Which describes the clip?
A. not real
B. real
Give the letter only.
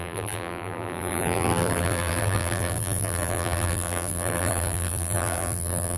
A